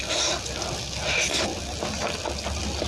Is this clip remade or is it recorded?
recorded